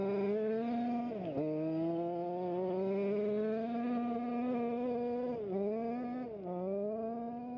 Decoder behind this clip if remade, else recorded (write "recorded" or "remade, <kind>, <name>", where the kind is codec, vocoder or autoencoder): recorded